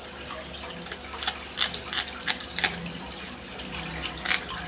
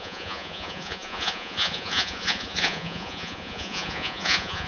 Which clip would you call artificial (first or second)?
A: second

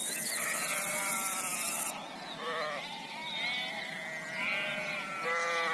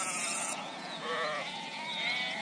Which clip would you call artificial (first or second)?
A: second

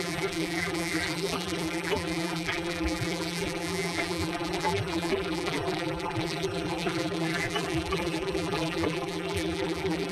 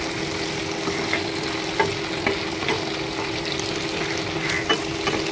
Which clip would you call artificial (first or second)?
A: first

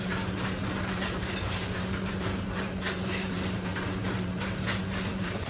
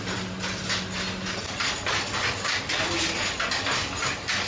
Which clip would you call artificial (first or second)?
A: first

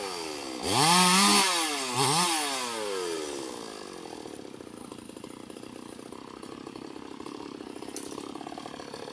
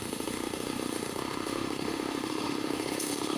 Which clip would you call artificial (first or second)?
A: second